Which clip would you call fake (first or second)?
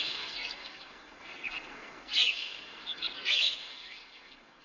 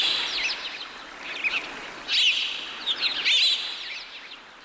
first